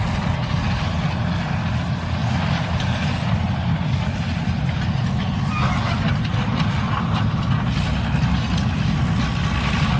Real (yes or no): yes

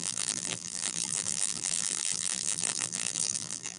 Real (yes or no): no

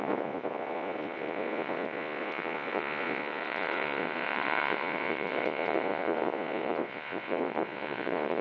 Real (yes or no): no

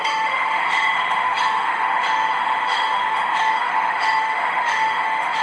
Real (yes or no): no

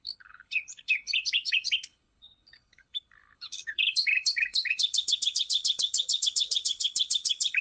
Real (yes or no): no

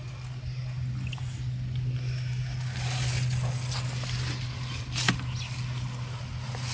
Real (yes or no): yes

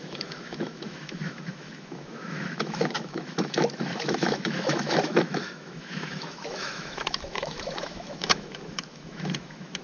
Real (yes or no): no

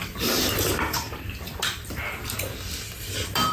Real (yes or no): yes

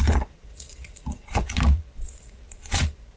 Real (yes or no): no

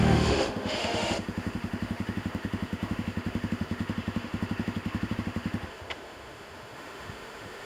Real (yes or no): no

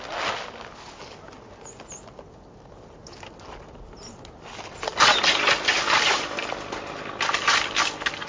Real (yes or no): yes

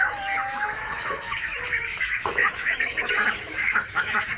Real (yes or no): no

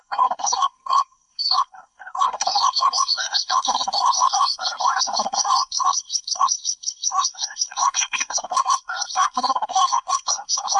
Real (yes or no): no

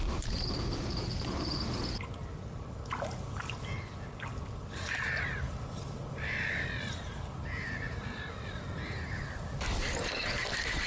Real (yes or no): yes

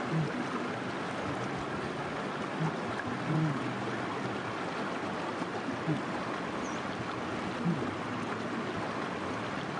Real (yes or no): yes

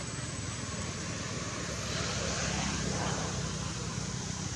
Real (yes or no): yes